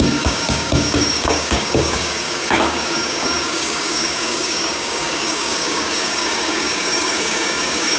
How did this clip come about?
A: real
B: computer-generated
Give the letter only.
B